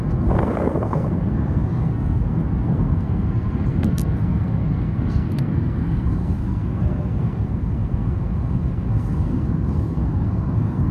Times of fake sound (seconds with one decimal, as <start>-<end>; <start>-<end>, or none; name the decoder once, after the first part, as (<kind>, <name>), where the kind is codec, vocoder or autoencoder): 0.0-10.9 (codec, SNAC)